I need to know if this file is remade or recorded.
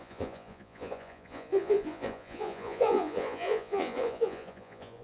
remade